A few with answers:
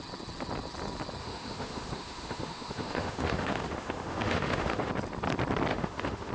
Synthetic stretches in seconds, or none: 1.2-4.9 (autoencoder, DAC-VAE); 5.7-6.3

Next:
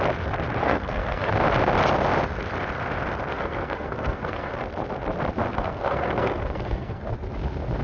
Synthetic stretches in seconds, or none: 0.6-1.3 (codec, SNAC); 3.3-4.5; 5.5-7.0

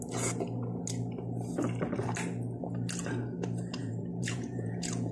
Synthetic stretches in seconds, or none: 3.8-5.1 (vocoder, Vocos)

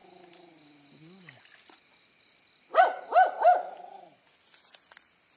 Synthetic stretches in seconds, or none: none

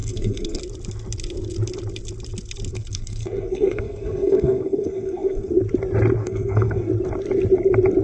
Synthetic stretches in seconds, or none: 0.0-0.6 (codec, SNAC); 2.7-5.5; 6.2-6.9

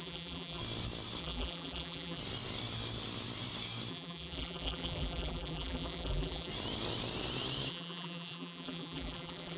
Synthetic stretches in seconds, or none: 0.0-0.6 (vocoder, BigVGAN v2); 1.2-2.2; 3.9-6.5; 7.7-9.6